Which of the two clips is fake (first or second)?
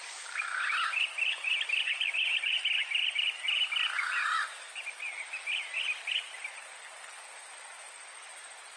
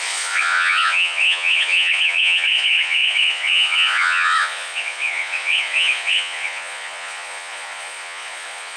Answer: second